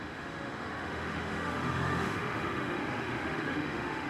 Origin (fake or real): fake